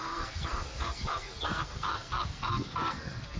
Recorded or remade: remade